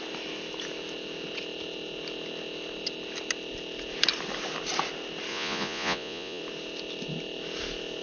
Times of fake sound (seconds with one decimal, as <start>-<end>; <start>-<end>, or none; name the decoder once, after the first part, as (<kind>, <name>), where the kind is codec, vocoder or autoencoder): 5.3-6.4 (vocoder, Vocos)